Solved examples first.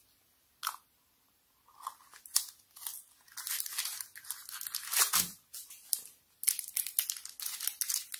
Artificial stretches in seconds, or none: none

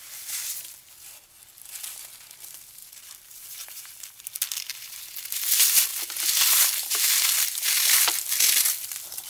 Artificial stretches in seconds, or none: 2.8-4.2 (vocoder, BigVGAN v2)

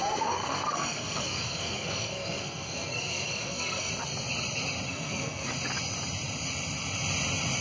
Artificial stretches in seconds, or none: 0.0-3.9 (codec, SNAC); 4.9-5.5

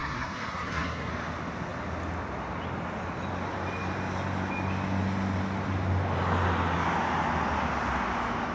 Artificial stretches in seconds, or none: 0.0-1.1 (codec, SNAC)

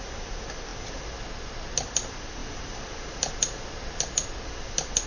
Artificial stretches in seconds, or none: none

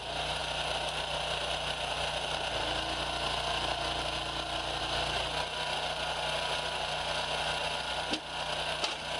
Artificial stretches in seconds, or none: none